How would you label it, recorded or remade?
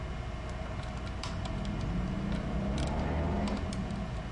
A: recorded